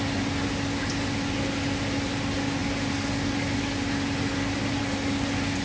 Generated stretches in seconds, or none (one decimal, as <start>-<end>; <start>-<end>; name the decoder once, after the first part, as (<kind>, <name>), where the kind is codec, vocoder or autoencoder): none